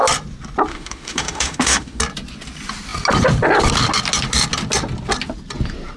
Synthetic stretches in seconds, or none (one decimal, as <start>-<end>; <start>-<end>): 0.7-2.0